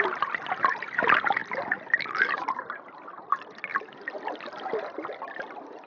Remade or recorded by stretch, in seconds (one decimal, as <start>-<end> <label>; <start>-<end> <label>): 0.0-5.9 recorded